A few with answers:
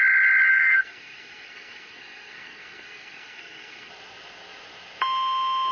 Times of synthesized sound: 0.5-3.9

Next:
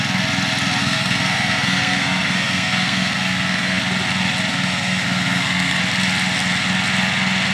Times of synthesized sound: 0.8-3.8; 4.5-5.8

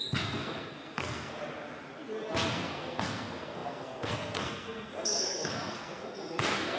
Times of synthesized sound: 0.0-1.4; 2.5-6.8

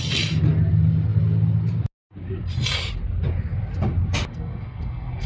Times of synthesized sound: 4.3-5.3

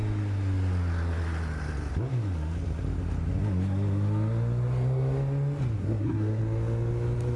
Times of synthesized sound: 5.8-6.4